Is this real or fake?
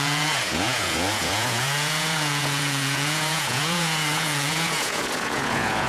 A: fake